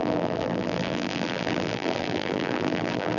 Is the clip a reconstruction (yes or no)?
yes